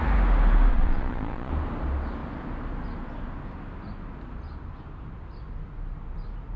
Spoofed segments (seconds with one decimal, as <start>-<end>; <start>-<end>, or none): 0.7-1.5